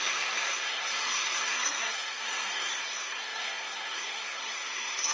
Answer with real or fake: fake